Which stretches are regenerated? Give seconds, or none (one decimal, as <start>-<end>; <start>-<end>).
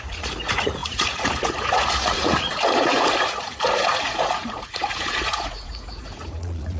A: 0.0-6.8